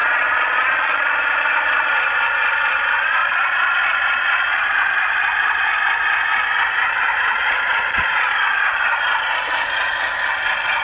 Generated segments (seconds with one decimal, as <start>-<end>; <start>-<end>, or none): 0.0-1.1; 3.2-5.8; 7.4-8.5